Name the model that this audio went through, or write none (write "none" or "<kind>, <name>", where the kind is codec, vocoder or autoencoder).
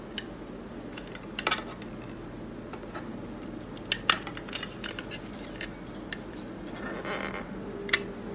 none